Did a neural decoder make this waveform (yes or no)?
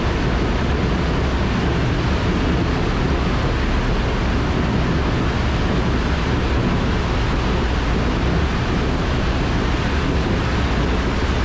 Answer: no